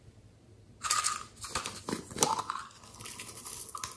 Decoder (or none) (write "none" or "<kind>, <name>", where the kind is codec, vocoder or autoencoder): none